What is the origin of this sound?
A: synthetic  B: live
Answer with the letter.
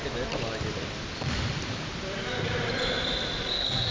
B